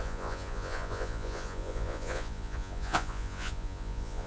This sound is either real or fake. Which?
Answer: fake